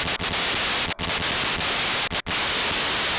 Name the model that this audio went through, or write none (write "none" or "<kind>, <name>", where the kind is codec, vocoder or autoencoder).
none